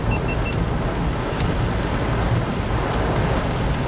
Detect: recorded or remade recorded